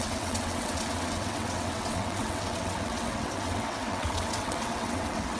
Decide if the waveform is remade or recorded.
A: remade